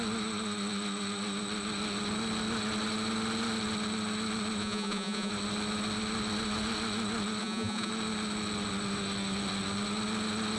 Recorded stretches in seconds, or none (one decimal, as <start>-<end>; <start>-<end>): 0.0-4.6; 5.3-7.4; 7.9-10.6